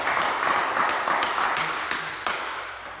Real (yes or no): yes